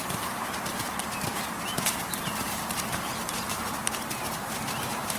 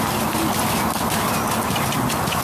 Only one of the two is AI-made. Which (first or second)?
first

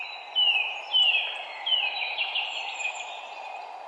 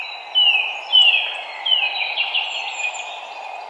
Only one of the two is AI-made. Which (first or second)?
first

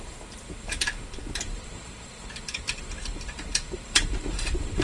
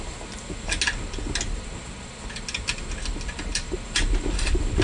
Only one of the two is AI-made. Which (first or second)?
first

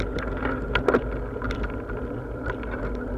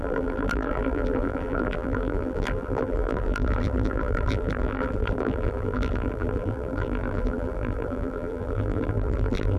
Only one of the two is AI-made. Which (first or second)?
second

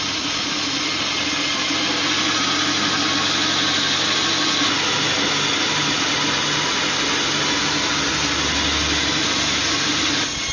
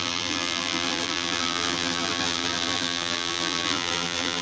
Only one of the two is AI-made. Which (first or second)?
second